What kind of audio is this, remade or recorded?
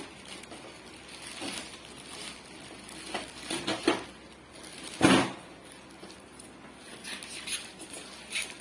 recorded